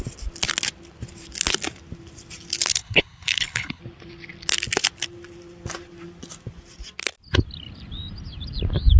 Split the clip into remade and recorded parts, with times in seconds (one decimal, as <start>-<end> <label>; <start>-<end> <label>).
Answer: 0.0-2.7 recorded; 2.7-3.8 remade; 3.8-9.0 recorded